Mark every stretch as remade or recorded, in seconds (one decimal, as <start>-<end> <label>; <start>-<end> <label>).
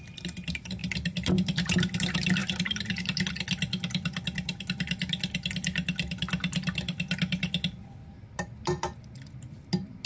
0.0-10.1 recorded